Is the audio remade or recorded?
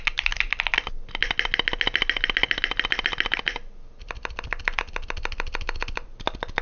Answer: recorded